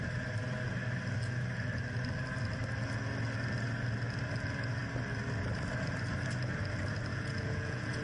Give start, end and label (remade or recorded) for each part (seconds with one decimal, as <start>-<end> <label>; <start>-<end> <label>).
0.0-7.1 recorded; 7.1-8.0 remade